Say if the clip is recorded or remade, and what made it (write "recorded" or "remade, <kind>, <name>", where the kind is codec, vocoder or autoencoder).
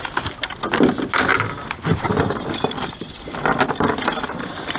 recorded